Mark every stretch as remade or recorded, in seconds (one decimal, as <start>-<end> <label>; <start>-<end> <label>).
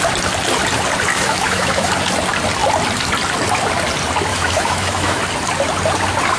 0.0-1.1 recorded; 1.1-1.9 remade; 1.9-4.3 recorded; 4.3-5.2 remade; 5.2-6.4 recorded